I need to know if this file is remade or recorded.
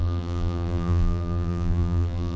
remade